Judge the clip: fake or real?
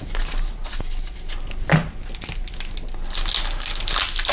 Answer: real